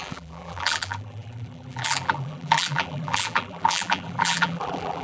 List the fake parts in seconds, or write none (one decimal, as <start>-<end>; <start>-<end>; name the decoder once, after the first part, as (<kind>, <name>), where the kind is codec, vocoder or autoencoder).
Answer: 0.0-5.0 (vocoder, BigVGAN v2)